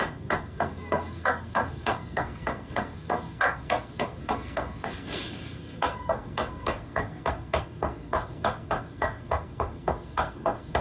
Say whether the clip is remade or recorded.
remade